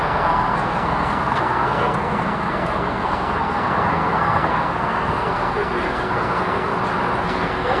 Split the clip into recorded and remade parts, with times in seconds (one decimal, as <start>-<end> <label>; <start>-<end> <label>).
0.0-6.7 remade; 6.7-7.2 recorded; 7.2-7.8 remade